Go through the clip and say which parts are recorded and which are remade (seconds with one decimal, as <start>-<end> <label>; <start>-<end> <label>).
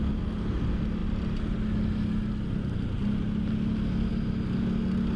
0.0-5.2 recorded